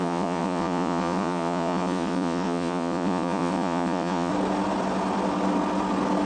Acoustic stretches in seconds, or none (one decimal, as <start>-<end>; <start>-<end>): 4.3-6.3